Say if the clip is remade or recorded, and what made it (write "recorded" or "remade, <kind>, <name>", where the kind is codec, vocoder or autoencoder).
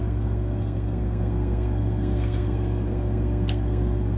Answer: remade, codec, SNAC